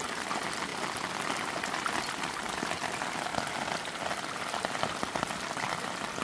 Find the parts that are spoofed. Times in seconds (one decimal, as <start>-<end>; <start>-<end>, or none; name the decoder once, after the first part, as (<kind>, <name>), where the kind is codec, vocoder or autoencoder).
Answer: none